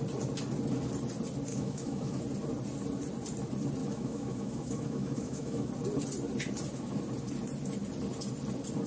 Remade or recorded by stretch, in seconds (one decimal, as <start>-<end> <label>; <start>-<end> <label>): 0.0-1.5 recorded; 1.5-2.2 remade; 2.2-3.8 recorded; 3.8-5.7 remade; 5.7-8.9 recorded